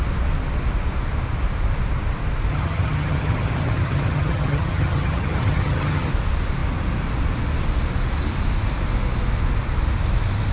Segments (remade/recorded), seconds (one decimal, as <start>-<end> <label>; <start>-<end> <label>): 0.0-2.5 recorded; 2.5-6.1 remade; 6.1-10.5 recorded